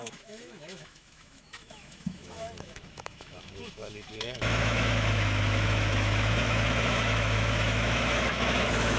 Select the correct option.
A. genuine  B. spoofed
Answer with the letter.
B